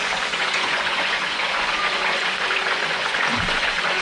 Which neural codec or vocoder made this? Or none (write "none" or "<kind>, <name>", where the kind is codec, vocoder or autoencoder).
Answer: vocoder, Vocos